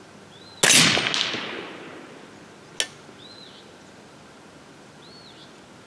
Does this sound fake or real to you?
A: real